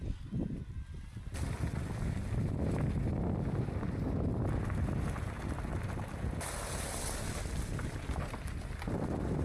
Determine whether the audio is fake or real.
real